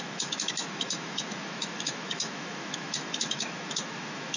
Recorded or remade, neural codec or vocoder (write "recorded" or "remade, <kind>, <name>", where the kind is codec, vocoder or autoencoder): remade, autoencoder, DAC-VAE